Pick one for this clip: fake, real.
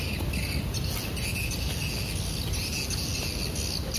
real